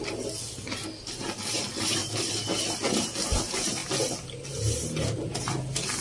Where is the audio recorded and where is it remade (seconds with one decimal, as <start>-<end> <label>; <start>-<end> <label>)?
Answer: 0.0-6.0 recorded